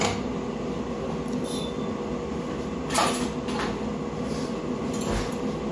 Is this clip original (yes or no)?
yes